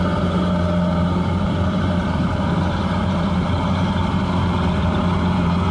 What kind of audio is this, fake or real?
fake